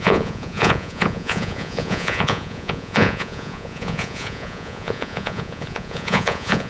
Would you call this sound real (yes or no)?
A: no